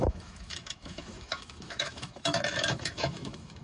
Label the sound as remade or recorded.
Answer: remade